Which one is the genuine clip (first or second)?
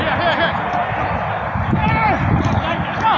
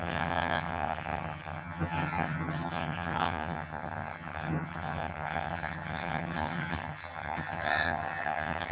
first